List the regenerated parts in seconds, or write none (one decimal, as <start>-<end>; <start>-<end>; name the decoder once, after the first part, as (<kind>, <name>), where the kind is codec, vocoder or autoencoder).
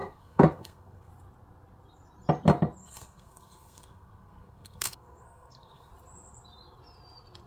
0.0-1.1 (codec, SNAC); 2.8-5.9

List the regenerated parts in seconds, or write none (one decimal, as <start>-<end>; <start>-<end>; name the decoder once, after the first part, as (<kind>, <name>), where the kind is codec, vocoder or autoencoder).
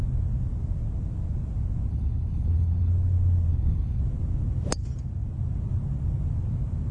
1.9-2.9 (codec, HILCodec); 3.5-4.0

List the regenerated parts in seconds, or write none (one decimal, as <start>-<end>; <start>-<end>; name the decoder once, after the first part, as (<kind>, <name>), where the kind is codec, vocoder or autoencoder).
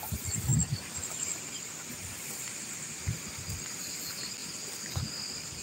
none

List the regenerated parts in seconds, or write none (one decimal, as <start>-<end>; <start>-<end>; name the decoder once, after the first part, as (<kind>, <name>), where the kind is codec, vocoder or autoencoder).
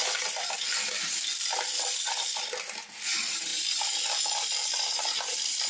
0.0-2.4 (vocoder, BigVGAN v2)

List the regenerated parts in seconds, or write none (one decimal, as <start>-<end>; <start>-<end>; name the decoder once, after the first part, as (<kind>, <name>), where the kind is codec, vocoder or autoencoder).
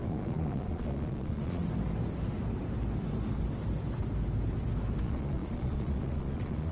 0.0-1.6 (vocoder, Vocos); 5.0-6.7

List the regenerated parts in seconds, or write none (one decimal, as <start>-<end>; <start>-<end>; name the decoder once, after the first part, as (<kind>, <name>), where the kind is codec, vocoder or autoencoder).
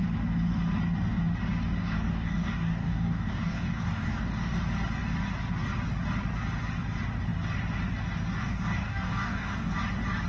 1.8-4.5 (codec, DAC); 8.4-9.7